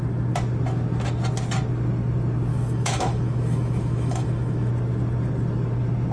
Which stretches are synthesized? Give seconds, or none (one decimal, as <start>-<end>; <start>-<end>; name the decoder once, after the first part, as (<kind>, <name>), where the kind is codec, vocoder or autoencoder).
2.5-4.7 (autoencoder, DAC-VAE)